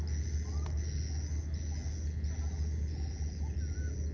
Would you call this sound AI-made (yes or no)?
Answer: no